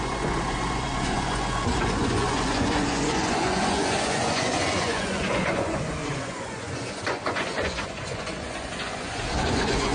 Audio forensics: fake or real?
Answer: fake